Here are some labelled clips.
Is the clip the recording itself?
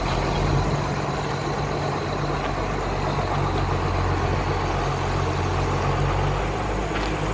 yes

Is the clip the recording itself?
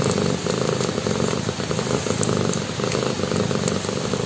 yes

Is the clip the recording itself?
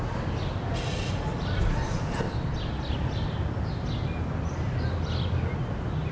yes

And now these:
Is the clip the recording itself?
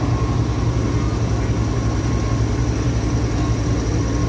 yes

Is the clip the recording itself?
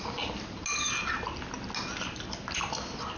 yes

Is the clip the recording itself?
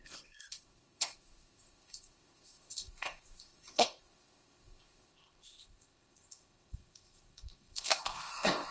no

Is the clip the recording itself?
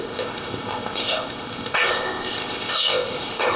no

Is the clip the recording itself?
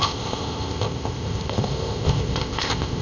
no